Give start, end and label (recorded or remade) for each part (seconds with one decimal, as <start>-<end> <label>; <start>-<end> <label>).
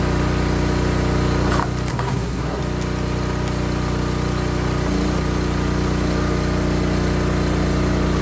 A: 0.0-1.9 recorded; 1.9-2.6 remade; 2.6-8.2 recorded